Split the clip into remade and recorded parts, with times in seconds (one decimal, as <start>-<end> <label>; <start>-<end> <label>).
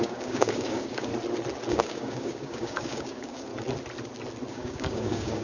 0.0-1.1 remade; 1.1-1.7 recorded; 1.7-3.5 remade; 3.5-4.5 recorded; 4.5-5.4 remade